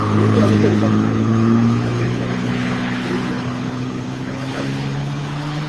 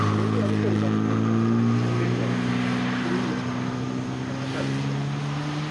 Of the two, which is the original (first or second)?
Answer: second